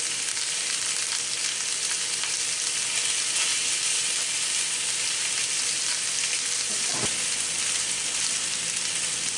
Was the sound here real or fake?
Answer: real